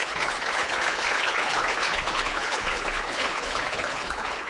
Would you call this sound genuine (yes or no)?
no